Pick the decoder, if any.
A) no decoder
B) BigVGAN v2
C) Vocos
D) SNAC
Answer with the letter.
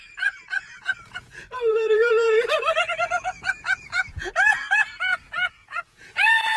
C